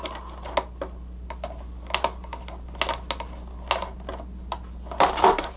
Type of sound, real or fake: real